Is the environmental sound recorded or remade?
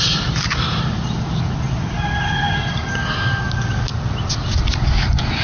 recorded